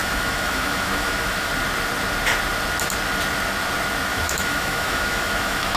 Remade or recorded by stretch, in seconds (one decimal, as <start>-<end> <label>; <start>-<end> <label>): 0.0-1.5 remade; 1.5-4.1 recorded; 4.1-5.8 remade